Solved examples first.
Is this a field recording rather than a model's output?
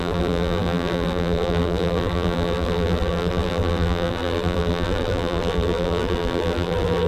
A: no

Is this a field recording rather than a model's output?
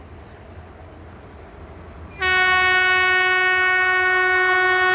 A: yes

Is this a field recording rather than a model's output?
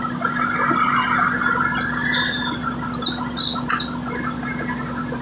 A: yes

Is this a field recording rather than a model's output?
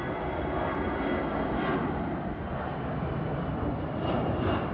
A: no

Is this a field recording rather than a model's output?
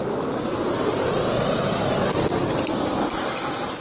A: no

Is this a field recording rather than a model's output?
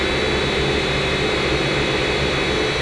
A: yes